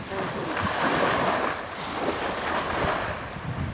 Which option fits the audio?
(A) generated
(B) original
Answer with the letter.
B